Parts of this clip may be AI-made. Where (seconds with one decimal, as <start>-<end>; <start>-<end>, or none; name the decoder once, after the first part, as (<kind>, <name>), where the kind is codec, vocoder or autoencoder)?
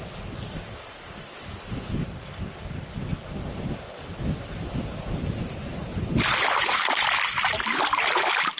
none